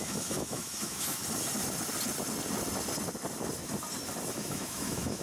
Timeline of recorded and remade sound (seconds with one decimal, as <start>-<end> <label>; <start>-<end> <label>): 0.0-1.2 remade; 1.2-4.3 recorded; 4.3-5.2 remade